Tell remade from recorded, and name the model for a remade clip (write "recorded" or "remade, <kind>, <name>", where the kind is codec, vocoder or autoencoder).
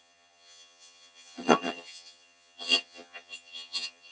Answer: remade, vocoder, HiFi-GAN